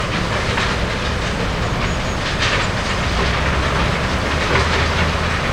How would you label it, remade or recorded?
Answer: recorded